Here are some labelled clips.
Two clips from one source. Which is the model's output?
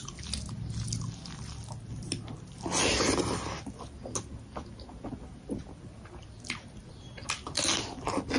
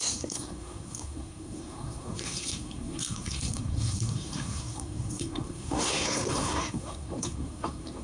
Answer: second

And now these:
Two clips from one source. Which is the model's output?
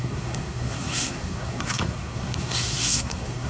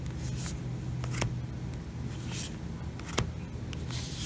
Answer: first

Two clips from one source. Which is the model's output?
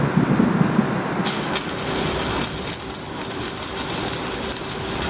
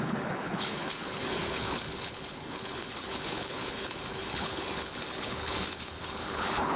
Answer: second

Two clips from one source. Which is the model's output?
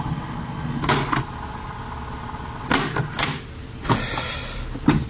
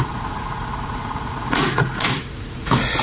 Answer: second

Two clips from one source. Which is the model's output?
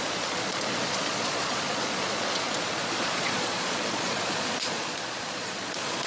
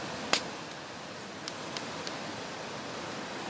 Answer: first